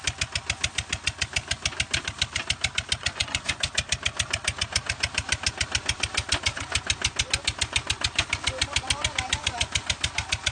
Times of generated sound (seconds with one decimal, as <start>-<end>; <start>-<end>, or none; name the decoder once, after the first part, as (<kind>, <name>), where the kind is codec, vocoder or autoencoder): 3.0-3.6 (vocoder, Vocos)